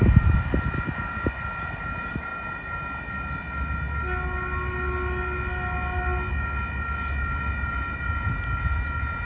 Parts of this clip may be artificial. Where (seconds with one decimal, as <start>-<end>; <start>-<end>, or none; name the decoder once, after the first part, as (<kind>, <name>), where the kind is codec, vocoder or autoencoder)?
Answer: none